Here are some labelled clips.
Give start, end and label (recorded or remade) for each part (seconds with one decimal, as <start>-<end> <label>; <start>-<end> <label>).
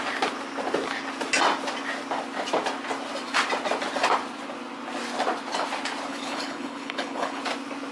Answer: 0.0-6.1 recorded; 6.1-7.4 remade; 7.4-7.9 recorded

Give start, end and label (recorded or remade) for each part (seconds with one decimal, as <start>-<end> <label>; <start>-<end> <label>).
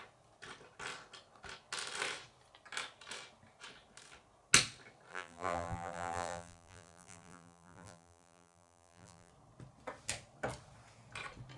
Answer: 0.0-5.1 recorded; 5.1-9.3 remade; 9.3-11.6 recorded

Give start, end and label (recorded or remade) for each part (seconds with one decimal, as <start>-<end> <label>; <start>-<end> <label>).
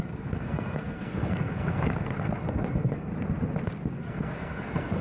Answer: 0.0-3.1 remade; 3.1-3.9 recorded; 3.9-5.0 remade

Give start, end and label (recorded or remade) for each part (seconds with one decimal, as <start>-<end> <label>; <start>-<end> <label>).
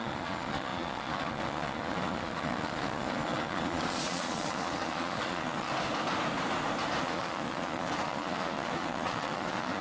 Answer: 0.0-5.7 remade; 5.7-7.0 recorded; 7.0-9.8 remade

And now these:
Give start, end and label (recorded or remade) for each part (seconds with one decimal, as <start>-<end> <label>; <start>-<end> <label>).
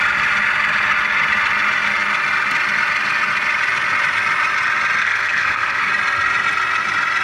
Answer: 0.0-5.0 recorded; 5.0-5.9 remade; 5.9-7.2 recorded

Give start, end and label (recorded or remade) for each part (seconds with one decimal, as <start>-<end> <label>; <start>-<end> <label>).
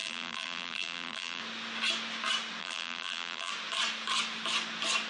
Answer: 0.0-1.4 remade; 1.4-2.6 recorded; 2.6-3.5 remade; 3.5-5.1 recorded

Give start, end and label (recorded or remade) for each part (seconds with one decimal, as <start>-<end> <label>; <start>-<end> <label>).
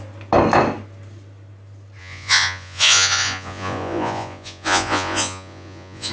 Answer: 0.0-2.0 recorded; 2.0-6.1 remade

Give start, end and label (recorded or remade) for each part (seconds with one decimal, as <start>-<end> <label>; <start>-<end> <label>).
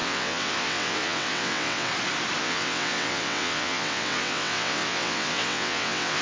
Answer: 0.0-1.9 remade; 1.9-2.4 recorded; 2.4-6.2 remade